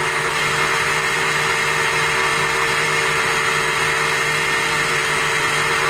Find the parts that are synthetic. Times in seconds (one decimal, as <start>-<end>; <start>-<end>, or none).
none